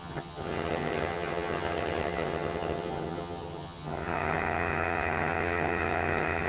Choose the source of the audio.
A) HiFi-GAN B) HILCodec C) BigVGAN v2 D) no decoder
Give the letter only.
A